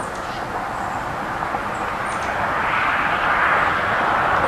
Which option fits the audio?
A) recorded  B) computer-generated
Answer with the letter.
A